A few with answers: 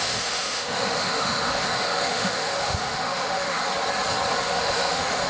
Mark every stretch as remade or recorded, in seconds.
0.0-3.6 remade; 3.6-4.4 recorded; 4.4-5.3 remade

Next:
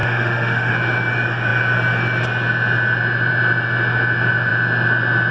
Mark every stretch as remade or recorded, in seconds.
0.0-0.7 remade; 0.7-5.3 recorded

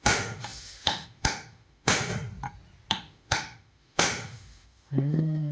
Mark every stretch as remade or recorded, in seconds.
0.0-2.1 remade; 2.1-2.9 recorded; 2.9-5.5 remade

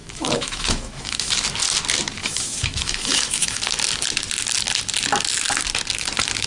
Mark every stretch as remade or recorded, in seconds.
0.0-1.3 remade; 1.3-2.2 recorded; 2.2-3.6 remade; 3.6-6.5 recorded

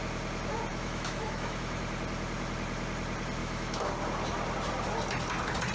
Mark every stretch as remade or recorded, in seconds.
0.0-0.7 recorded; 0.7-1.8 remade; 1.8-3.4 recorded; 3.4-3.9 remade; 3.9-5.7 recorded